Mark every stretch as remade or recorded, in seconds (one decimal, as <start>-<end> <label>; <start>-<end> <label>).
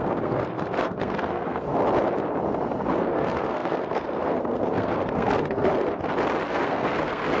0.0-1.7 remade; 1.7-3.0 recorded; 3.0-5.7 remade; 5.7-6.5 recorded; 6.5-7.4 remade